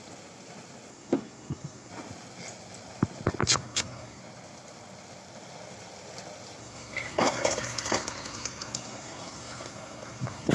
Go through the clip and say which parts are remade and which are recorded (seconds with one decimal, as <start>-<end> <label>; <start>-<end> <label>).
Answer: 0.0-0.9 recorded; 0.9-1.9 remade; 1.9-3.4 recorded; 3.4-4.2 remade; 4.2-6.6 recorded; 6.6-10.5 remade

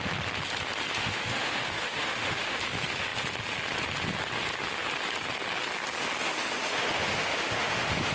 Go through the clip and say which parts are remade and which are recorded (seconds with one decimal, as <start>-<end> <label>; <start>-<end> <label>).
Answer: 0.0-1.0 recorded; 1.0-2.6 remade; 2.6-6.2 recorded; 6.2-8.1 remade

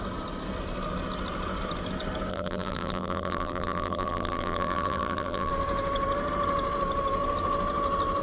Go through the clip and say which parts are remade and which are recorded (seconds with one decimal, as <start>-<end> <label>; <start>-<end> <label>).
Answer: 0.0-2.3 recorded; 2.3-5.5 remade; 5.5-8.2 recorded

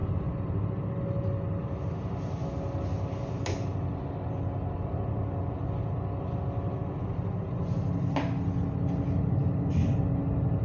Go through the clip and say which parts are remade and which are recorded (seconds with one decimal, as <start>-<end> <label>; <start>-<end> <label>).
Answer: 0.0-10.6 recorded

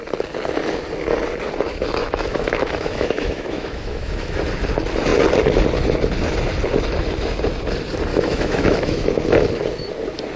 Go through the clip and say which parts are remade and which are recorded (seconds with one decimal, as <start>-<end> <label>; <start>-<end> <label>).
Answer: 0.0-2.0 recorded; 2.0-4.4 remade; 4.4-8.1 recorded; 8.1-9.2 remade; 9.2-10.4 recorded

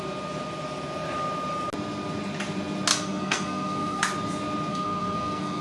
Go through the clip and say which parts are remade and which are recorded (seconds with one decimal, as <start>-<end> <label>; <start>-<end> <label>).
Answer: 0.0-2.9 recorded; 2.9-4.0 remade; 4.0-4.7 recorded; 4.7-5.6 remade

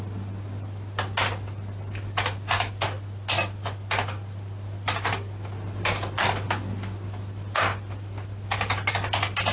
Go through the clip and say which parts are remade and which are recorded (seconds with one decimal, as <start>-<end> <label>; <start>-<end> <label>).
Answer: 0.0-9.5 recorded